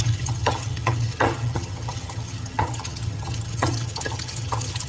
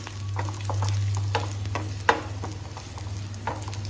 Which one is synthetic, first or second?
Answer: first